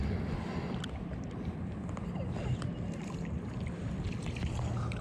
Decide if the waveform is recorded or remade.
recorded